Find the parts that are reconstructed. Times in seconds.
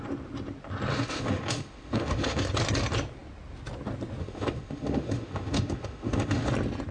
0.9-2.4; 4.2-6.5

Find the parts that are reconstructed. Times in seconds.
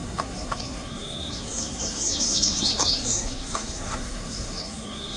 0.0-5.2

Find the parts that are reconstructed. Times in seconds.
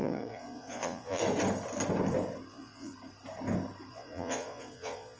0.0-1.2; 2.5-2.9; 3.9-5.2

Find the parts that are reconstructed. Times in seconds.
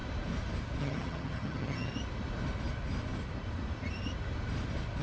0.8-1.9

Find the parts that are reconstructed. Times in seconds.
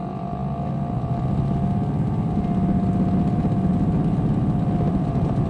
4.9-5.5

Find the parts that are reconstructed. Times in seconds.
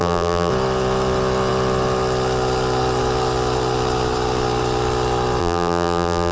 0.0-0.5; 5.4-6.3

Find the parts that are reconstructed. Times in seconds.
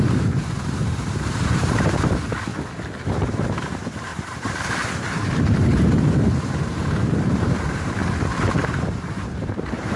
0.0-2.5; 3.1-8.0; 8.6-10.0